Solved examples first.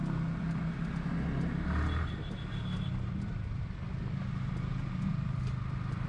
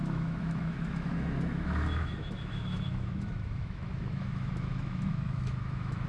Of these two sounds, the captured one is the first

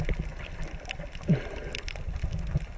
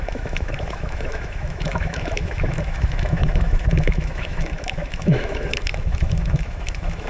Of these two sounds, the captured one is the first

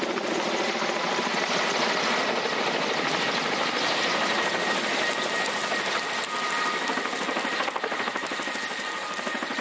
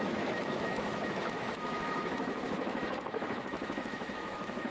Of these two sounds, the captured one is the first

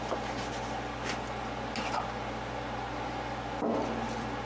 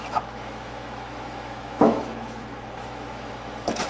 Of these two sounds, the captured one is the first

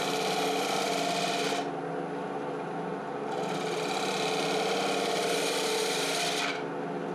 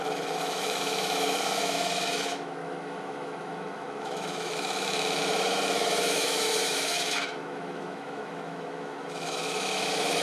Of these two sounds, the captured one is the first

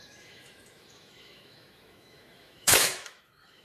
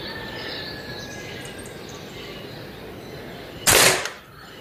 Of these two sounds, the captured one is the second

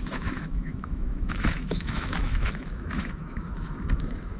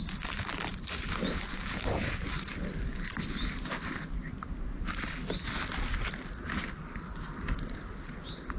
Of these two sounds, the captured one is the second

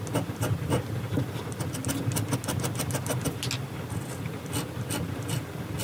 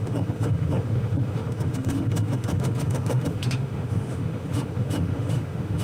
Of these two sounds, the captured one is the first